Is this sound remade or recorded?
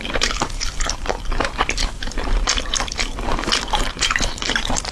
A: remade